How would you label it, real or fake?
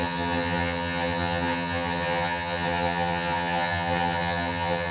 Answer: fake